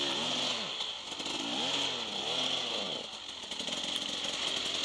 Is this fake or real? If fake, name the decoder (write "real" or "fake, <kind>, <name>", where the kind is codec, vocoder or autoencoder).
real